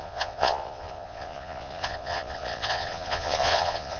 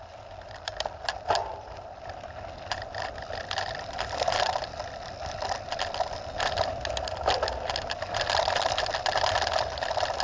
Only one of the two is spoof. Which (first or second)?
first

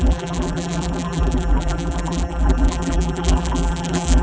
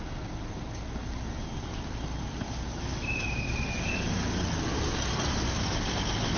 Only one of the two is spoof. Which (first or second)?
first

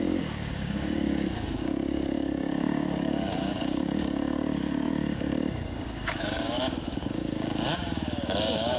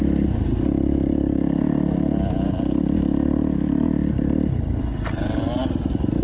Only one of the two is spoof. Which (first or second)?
first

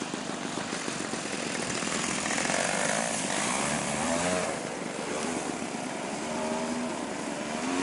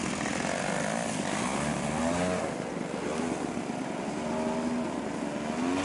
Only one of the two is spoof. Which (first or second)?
first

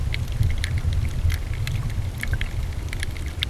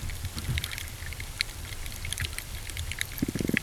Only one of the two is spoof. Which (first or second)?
second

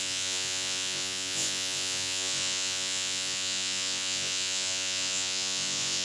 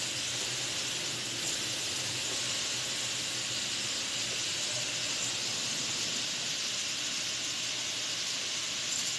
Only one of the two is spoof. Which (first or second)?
first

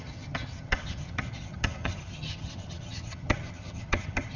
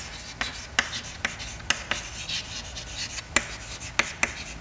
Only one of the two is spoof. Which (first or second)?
first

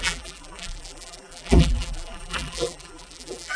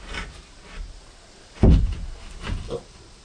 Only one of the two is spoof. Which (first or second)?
first